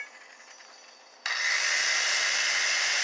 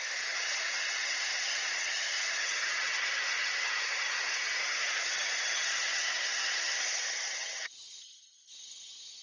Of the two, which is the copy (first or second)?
second